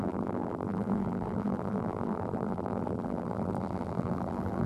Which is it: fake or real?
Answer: fake